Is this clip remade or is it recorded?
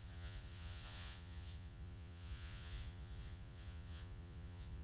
remade